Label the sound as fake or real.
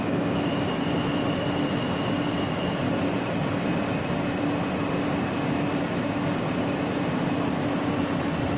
real